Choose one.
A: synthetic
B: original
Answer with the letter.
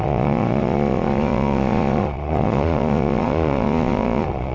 A